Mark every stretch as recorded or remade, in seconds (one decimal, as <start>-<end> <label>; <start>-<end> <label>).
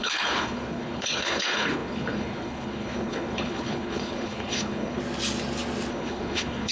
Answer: 0.0-5.0 remade; 5.0-5.9 recorded; 5.9-6.7 remade